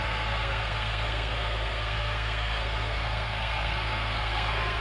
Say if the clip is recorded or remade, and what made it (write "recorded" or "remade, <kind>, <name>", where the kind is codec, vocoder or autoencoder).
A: remade, codec, SNAC